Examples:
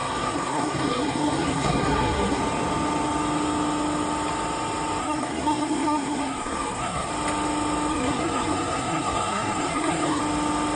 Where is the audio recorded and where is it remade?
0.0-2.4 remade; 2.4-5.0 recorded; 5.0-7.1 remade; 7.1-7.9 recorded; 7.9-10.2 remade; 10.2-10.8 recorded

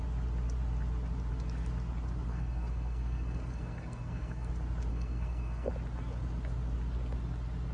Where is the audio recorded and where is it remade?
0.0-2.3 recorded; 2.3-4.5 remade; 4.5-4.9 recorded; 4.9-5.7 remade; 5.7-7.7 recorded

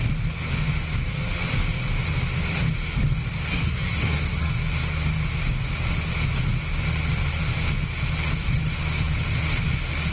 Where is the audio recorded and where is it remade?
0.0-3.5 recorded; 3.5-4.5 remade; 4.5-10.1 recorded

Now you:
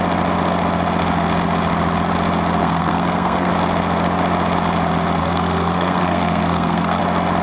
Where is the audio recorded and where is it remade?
0.0-2.6 recorded; 2.6-3.5 remade; 3.5-5.2 recorded; 5.2-7.0 remade; 7.0-7.4 recorded

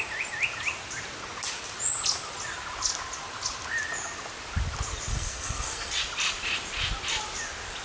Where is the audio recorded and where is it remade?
0.0-5.1 recorded; 5.1-5.9 remade; 5.9-7.8 recorded

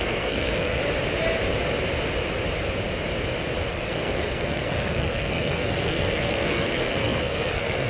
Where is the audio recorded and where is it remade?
0.0-0.8 remade; 0.8-3.7 recorded; 3.7-7.9 remade